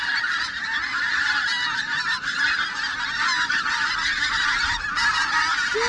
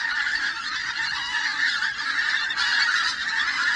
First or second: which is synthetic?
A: second